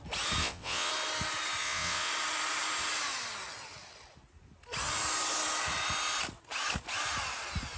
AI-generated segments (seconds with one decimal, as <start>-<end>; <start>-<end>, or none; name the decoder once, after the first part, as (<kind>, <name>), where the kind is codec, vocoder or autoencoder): 0.4-0.9 (vocoder, WaveNeXt); 1.6-2.1